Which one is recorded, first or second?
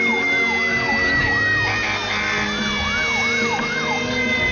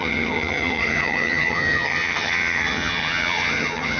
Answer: first